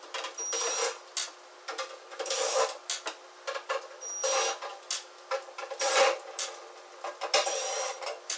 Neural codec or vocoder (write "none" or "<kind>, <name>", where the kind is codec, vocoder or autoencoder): none